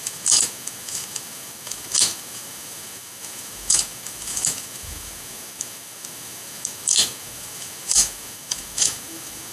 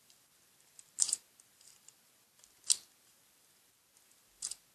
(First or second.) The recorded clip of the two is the second